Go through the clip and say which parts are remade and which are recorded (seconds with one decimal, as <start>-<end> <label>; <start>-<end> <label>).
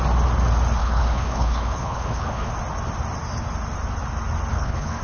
0.0-0.8 recorded; 0.8-2.5 remade; 2.5-4.5 recorded; 4.5-5.0 remade